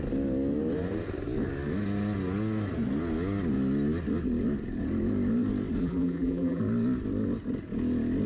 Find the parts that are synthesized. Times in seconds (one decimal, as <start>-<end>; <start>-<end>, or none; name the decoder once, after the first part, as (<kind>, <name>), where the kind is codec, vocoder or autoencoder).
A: 5.8-6.6 (vocoder, BigVGAN v2)